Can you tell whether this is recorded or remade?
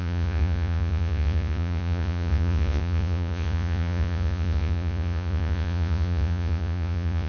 remade